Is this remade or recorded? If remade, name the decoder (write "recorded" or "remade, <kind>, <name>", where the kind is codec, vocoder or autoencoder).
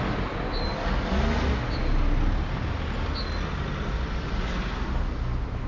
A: recorded